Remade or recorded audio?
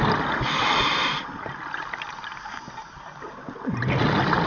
recorded